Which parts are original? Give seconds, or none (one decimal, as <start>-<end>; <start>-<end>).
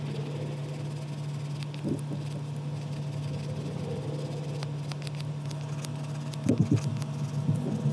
0.0-7.9